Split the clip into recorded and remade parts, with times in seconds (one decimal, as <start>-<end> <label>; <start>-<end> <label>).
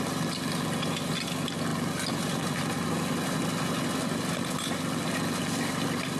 0.0-6.2 recorded